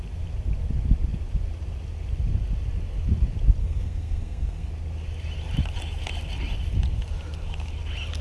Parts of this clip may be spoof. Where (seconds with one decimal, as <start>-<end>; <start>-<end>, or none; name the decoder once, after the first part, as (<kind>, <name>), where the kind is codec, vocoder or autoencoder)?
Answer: 3.6-4.7 (codec, SNAC)